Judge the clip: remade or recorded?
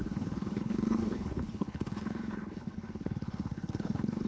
remade